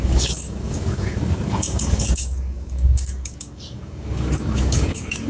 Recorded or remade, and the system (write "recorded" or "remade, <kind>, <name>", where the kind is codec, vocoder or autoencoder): remade, codec, DAC